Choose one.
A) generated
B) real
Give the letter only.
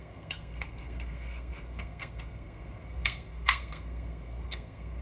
A